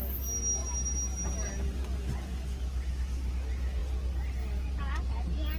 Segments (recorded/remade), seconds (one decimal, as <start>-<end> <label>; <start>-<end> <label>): 0.0-5.6 recorded

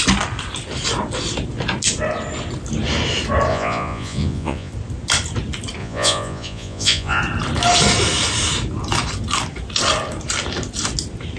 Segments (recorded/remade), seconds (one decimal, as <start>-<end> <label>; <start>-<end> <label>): 0.0-3.5 recorded; 3.5-4.7 remade; 4.7-5.8 recorded; 5.8-7.2 remade; 7.2-11.4 recorded

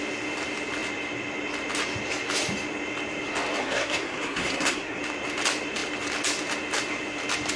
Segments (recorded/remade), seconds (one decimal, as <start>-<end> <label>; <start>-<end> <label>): 0.0-3.6 recorded; 3.6-5.0 remade; 5.0-7.6 recorded

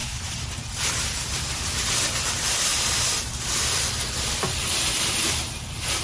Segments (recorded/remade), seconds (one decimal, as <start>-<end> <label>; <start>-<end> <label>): 0.0-1.4 remade; 1.4-2.7 recorded; 2.7-3.5 remade; 3.5-5.2 recorded; 5.2-6.0 remade

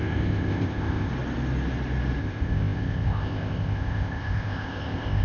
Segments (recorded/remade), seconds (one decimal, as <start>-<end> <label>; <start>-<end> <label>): 0.0-1.1 remade; 1.1-2.2 recorded; 2.2-5.2 remade